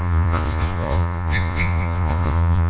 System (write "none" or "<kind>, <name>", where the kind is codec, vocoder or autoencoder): vocoder, Vocos